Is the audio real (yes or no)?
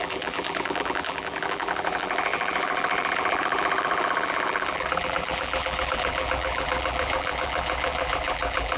no